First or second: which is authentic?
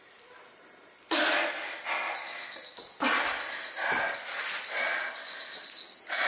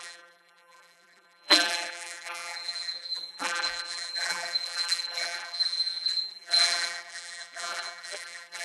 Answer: first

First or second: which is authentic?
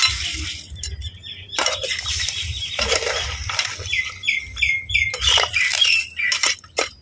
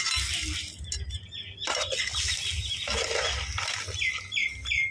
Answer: second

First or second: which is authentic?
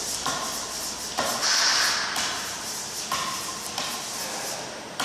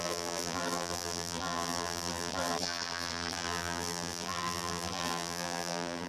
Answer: first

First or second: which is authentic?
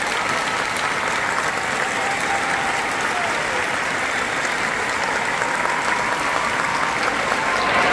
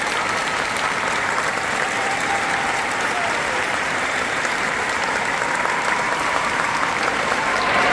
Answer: first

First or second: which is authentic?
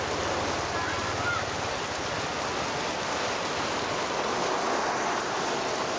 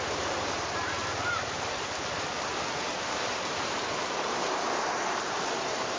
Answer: first